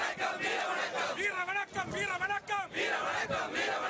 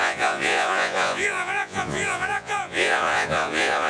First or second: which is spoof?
second